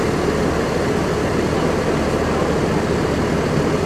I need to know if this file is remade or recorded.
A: recorded